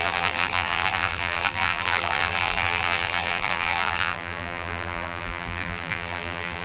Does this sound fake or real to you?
fake